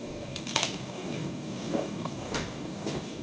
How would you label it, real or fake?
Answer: fake